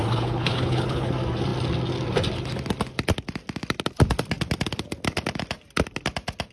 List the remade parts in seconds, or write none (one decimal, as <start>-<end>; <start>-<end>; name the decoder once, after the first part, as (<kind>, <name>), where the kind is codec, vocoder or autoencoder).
0.0-1.1 (codec, HILCodec)